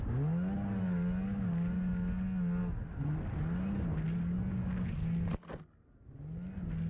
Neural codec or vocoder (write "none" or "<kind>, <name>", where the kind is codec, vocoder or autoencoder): none